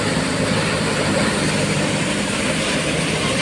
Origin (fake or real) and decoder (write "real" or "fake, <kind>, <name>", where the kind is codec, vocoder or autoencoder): fake, vocoder, BigVGAN v2